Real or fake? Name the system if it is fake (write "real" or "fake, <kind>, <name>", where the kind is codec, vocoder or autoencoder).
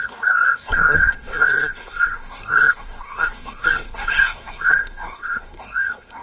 fake, codec, SNAC